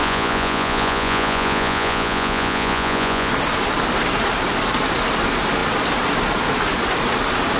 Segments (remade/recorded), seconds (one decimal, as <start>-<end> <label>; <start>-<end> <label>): 0.0-3.3 remade; 3.3-7.6 recorded